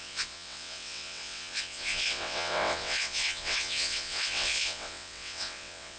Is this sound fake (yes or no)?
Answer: yes